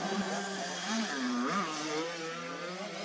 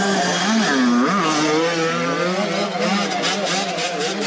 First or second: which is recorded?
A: second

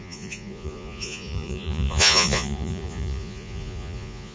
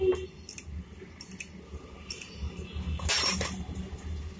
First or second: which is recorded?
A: second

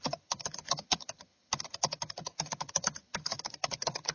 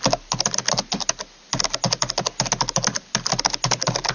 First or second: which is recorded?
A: second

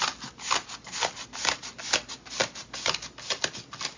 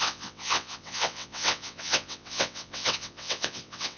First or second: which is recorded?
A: first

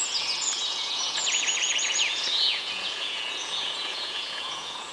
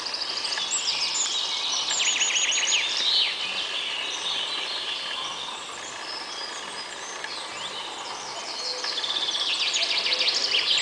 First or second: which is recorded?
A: second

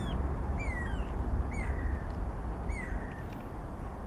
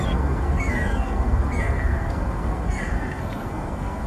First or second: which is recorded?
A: first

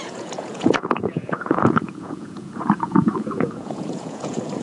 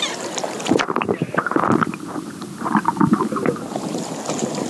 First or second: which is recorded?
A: second